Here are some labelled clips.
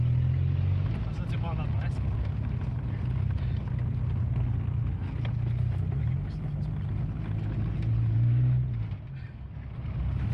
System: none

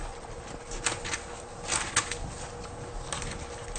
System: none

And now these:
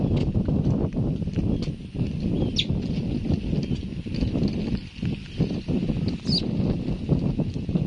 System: none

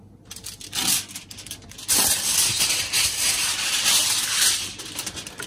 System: none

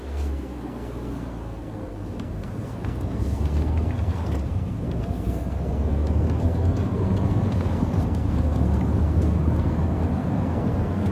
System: codec, SNAC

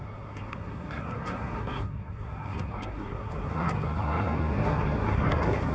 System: codec, SNAC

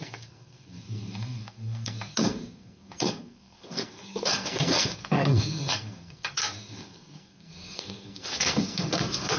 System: codec, SNAC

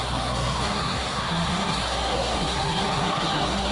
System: codec, SNAC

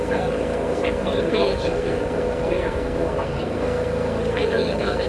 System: codec, SNAC